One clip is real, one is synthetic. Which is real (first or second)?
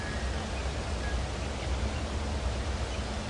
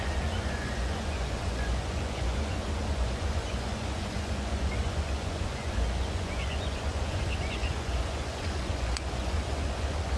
first